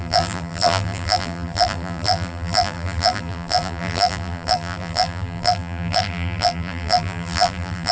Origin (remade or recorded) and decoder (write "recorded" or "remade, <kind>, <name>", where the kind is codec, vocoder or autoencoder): remade, vocoder, BigVGAN v2